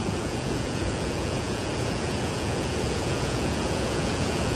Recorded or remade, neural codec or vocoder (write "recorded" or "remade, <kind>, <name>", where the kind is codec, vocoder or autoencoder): remade, vocoder, Vocos